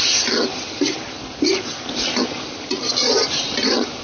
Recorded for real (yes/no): yes